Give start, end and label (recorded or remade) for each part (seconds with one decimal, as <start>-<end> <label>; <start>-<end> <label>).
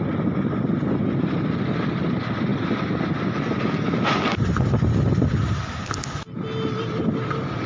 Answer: 0.0-7.7 recorded